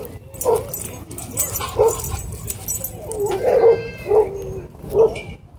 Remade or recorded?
recorded